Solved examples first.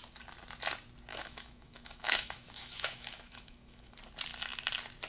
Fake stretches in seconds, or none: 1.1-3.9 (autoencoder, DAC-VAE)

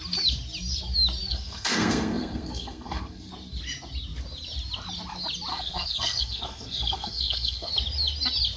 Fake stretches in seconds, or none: 1.3-3.3 (codec, SNAC); 5.5-7.7